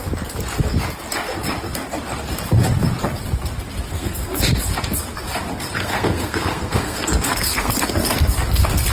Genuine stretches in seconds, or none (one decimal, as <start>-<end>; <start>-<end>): 0.0-3.9; 4.4-5.8; 7.7-8.9